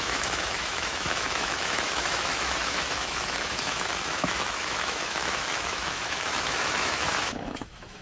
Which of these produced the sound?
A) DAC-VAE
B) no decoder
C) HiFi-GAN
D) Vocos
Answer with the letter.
A